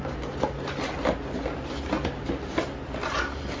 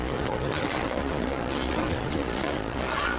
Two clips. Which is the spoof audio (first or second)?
second